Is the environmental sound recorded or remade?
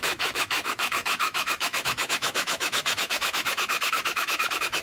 remade